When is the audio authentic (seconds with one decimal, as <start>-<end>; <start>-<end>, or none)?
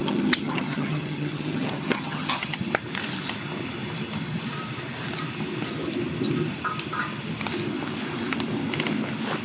2.6-9.4